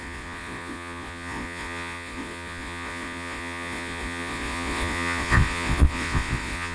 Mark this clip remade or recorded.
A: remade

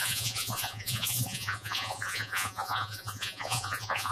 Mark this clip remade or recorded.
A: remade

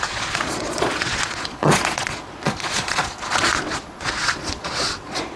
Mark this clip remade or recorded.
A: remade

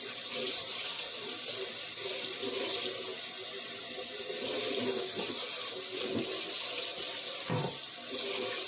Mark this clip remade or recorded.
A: recorded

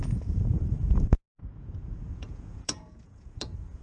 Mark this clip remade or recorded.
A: remade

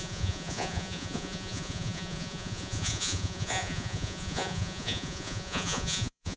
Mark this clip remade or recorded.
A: remade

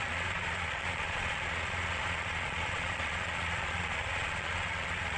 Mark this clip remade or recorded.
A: remade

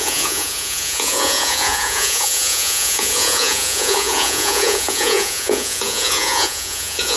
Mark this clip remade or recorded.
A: remade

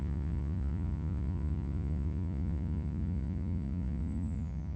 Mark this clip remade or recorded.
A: remade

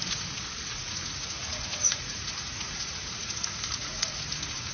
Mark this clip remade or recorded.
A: remade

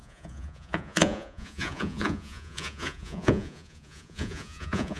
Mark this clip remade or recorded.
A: remade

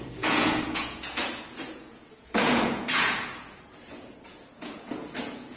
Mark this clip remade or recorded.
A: remade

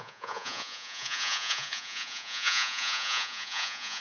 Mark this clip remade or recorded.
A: remade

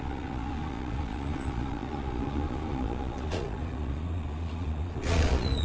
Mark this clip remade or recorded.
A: remade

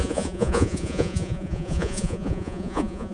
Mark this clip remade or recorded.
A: remade